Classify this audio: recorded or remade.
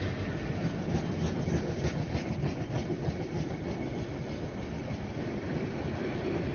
remade